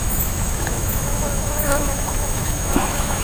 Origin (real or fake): fake